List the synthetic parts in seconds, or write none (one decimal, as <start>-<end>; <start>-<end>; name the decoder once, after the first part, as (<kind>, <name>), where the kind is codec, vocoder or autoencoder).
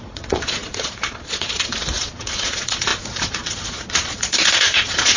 0.0-5.2 (vocoder, Vocos)